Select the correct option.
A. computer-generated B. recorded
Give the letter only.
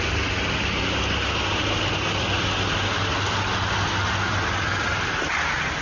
B